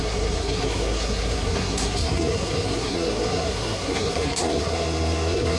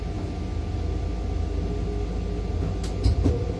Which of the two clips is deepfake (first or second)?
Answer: first